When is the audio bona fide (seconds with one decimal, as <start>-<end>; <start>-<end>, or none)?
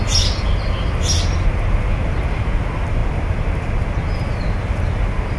0.0-5.4